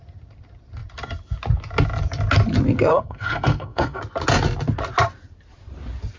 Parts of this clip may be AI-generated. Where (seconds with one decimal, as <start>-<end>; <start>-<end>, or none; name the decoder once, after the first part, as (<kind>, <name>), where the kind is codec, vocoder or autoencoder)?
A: 2.9-4.0 (codec, SNAC)